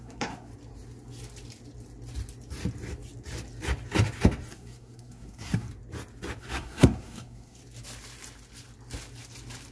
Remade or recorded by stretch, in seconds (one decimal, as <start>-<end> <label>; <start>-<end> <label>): 0.0-0.5 remade; 0.5-4.5 recorded; 4.5-5.7 remade; 5.7-6.4 recorded; 6.4-7.6 remade; 7.6-9.7 recorded